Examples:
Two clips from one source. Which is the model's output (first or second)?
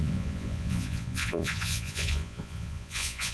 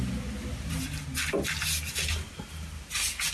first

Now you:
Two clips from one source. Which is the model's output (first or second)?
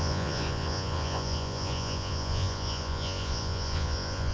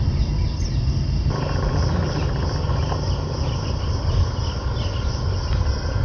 first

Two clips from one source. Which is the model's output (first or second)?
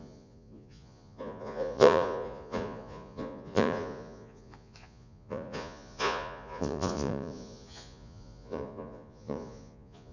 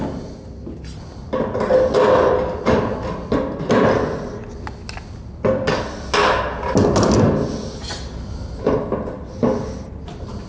first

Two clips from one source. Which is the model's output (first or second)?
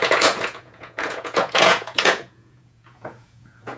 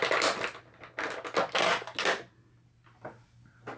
first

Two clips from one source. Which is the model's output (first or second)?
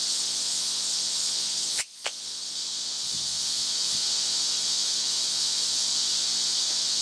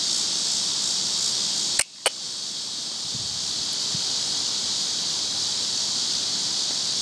first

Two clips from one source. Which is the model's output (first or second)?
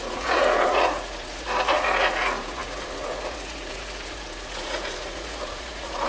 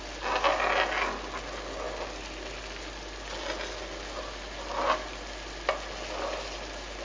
first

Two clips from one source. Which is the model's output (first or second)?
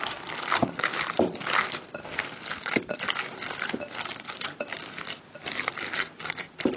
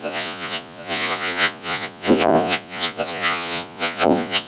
second